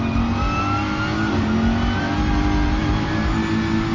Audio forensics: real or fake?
real